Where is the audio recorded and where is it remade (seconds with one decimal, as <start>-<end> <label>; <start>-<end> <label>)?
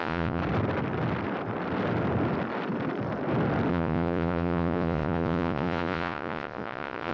0.0-0.4 remade; 0.4-3.7 recorded; 3.7-7.1 remade